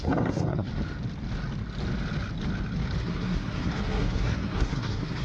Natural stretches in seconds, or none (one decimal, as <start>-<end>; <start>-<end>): 0.7-3.0